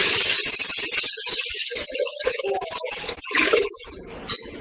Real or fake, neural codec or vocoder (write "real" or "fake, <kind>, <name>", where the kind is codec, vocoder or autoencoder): real